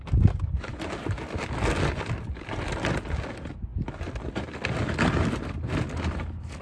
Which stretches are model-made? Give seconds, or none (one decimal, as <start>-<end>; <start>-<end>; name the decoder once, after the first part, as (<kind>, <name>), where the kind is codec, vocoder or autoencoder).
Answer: none